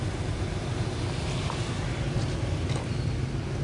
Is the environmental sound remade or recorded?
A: recorded